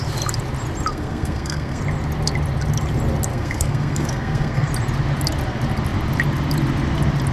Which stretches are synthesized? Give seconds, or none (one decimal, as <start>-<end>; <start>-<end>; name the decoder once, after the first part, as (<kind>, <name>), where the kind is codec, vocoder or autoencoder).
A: 0.9-1.8 (codec, SNAC); 3.3-4.7